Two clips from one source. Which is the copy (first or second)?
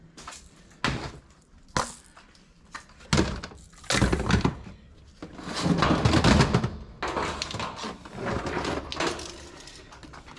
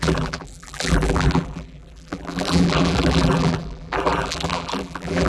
second